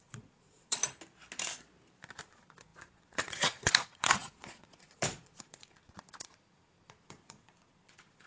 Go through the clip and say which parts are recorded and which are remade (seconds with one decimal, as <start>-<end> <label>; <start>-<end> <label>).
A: 0.0-0.8 remade; 0.8-2.2 recorded; 2.2-8.3 remade